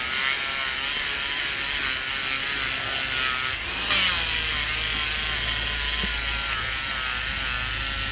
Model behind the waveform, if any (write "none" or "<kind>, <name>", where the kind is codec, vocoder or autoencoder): none